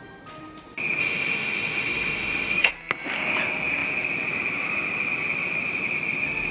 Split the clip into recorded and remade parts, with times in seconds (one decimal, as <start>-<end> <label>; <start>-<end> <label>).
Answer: 0.0-1.0 recorded; 1.0-2.7 remade; 2.7-6.5 recorded